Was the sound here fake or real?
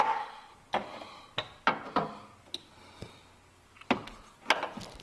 real